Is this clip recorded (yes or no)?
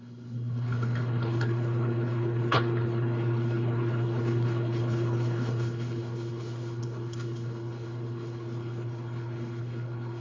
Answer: no